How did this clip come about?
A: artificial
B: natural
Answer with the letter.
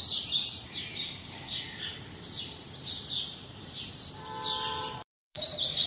A